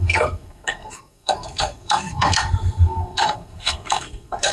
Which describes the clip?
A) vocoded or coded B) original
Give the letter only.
A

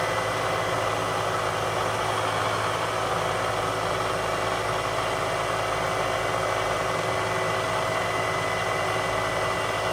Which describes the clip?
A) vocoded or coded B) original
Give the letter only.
B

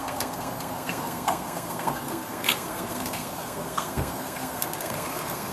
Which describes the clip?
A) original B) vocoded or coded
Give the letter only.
B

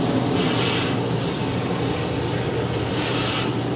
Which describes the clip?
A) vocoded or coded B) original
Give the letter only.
B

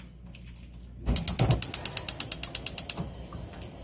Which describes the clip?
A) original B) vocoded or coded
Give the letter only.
A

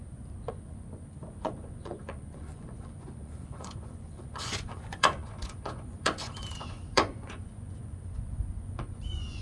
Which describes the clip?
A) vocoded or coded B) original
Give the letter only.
A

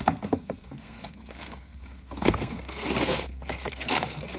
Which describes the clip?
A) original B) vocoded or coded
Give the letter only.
B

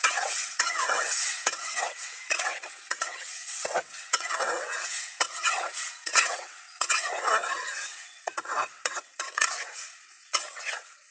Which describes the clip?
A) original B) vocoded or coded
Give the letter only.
B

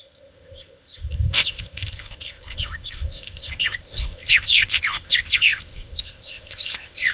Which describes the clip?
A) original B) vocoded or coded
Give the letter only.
B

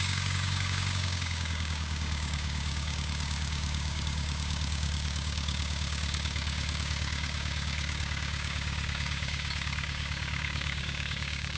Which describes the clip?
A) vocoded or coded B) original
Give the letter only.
A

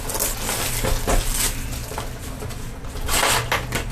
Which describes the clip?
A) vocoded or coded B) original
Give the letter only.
B